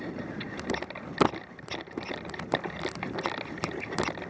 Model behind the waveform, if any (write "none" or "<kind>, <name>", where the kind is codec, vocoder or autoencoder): none